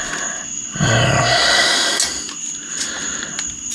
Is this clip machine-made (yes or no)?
no